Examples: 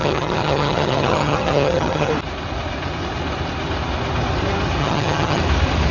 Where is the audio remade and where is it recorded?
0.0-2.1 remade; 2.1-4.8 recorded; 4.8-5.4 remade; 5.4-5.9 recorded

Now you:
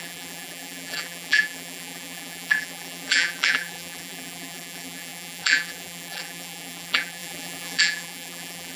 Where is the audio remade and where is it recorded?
0.0-8.8 remade

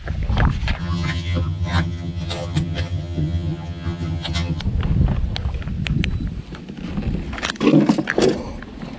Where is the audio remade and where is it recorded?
0.0-0.8 recorded; 0.8-4.6 remade; 4.6-9.0 recorded

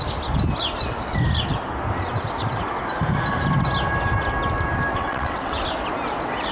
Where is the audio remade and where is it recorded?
0.0-4.9 recorded; 4.9-5.6 remade; 5.6-6.5 recorded